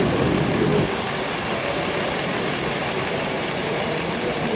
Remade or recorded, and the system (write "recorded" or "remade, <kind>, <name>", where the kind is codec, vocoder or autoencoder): recorded